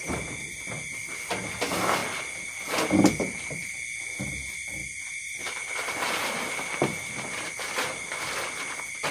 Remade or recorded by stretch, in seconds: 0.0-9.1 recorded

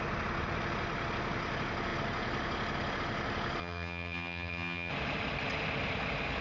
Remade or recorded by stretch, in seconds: 0.0-3.6 recorded; 3.6-4.9 remade; 4.9-6.4 recorded

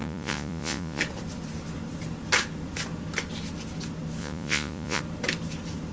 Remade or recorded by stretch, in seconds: 0.0-1.0 remade; 1.0-4.2 recorded; 4.2-5.0 remade; 5.0-5.9 recorded

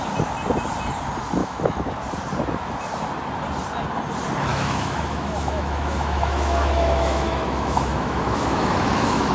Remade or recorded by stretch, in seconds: 0.0-1.4 recorded; 1.4-1.9 remade; 1.9-4.5 recorded; 4.5-9.3 remade

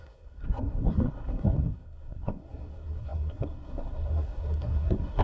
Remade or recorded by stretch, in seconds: 0.0-5.2 remade